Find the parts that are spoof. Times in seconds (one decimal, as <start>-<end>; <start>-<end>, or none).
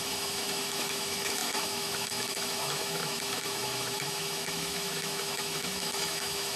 0.0-6.6